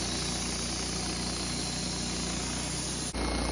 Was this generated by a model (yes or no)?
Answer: no